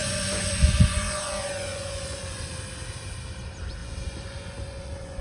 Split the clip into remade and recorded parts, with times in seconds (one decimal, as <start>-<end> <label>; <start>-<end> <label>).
0.0-2.5 remade; 2.5-3.8 recorded; 3.8-5.2 remade